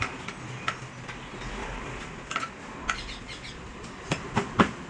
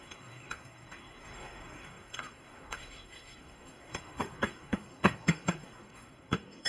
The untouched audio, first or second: first